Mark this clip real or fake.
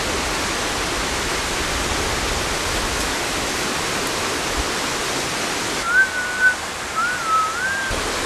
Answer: real